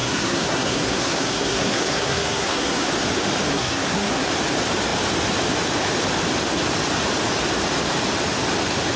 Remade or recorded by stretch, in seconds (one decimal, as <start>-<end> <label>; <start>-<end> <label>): 0.0-2.9 remade; 2.9-3.5 recorded; 3.5-4.3 remade; 4.3-9.0 recorded